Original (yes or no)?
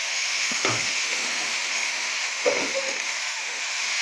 no